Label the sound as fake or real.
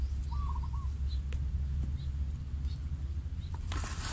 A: real